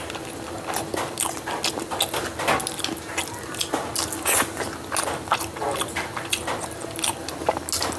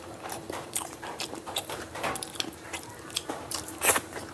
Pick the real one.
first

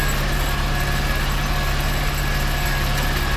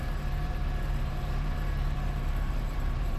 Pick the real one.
first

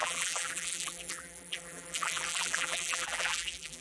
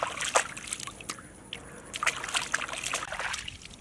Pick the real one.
second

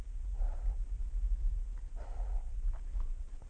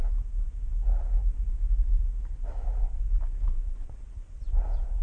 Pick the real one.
second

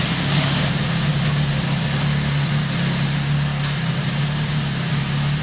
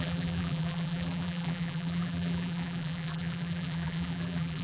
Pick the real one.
first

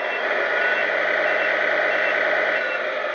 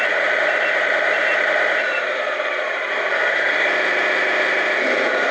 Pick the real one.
first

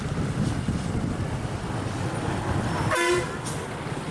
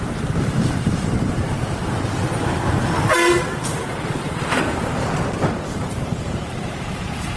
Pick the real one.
first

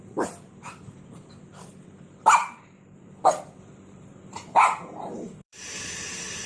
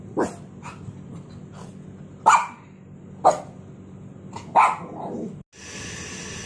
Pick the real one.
second